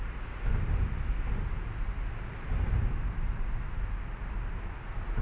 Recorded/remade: recorded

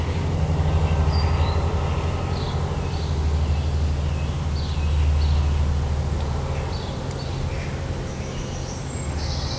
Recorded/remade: recorded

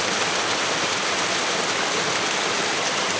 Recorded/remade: recorded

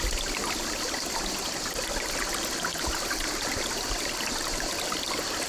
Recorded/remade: recorded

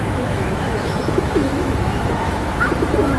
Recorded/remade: remade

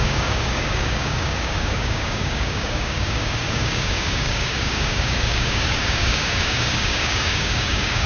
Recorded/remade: remade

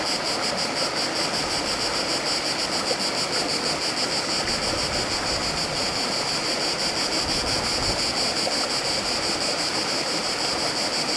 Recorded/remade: recorded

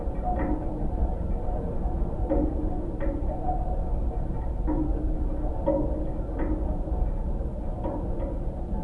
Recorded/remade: remade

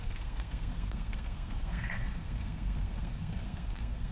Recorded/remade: remade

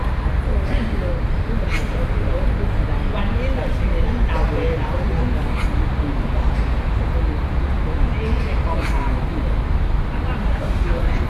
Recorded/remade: recorded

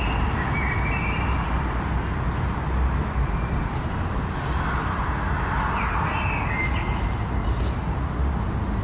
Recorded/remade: recorded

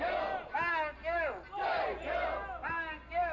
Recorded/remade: recorded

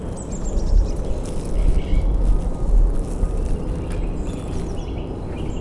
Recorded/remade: recorded